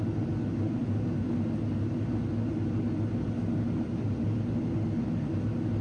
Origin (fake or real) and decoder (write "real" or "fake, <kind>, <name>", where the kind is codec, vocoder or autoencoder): real